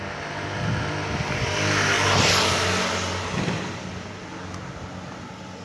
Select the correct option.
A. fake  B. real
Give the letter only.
B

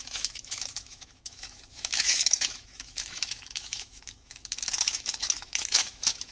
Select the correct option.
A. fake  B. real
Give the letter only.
A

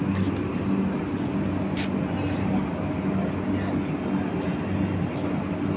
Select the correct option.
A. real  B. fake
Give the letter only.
A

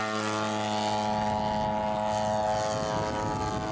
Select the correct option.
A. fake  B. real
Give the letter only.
B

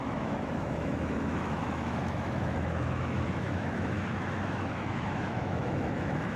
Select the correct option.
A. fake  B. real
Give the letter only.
A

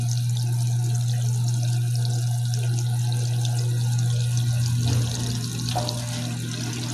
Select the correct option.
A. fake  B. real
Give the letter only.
B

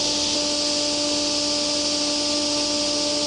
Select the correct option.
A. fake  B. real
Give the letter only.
B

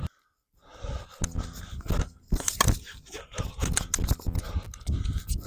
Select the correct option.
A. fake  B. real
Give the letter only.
B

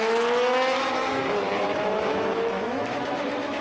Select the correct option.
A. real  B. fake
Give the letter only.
B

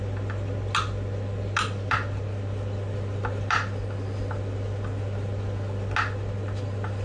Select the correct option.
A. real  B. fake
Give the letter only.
A